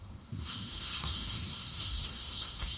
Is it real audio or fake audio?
fake